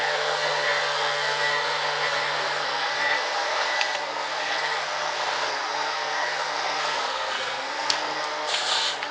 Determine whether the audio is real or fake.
fake